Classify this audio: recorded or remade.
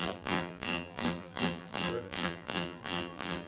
remade